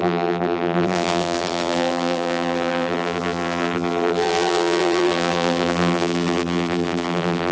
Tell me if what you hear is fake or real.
fake